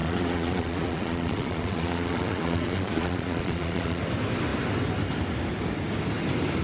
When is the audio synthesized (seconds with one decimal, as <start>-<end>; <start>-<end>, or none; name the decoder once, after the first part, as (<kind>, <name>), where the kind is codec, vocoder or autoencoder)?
0.0-4.0 (vocoder, Vocos)